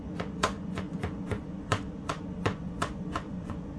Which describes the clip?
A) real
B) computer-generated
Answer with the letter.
B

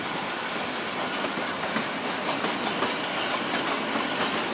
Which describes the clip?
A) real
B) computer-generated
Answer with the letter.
A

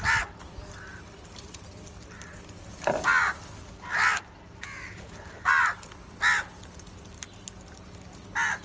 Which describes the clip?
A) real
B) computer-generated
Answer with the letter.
A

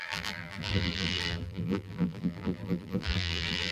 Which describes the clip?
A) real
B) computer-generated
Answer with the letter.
B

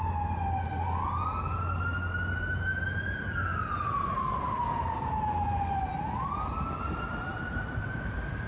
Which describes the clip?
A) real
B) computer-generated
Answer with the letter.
A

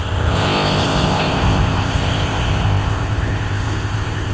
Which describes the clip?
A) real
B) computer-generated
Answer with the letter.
B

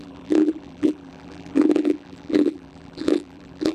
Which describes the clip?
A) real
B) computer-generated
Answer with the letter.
B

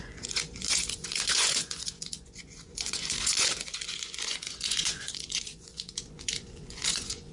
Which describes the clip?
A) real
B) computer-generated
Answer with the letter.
B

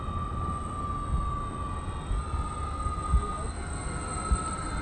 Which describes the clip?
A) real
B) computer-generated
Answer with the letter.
A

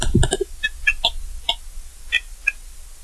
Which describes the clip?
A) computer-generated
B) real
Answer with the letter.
B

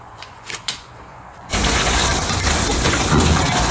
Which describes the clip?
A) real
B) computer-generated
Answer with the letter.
B